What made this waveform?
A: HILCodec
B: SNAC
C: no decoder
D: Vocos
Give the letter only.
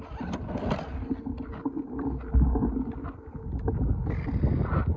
C